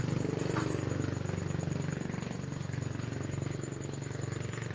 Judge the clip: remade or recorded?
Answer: recorded